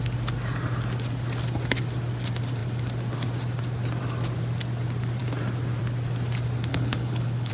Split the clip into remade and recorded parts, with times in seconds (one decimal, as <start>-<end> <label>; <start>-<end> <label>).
0.0-6.7 recorded; 6.7-7.5 remade